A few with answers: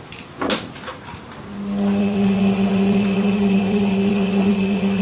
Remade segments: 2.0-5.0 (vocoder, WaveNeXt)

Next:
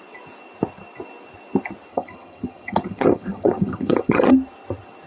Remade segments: 1.9-4.3 (vocoder, HiFi-GAN)

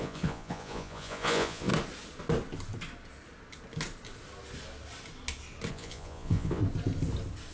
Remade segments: 0.0-1.7 (vocoder, Vocos); 5.7-6.6

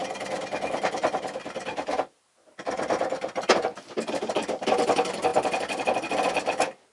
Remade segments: none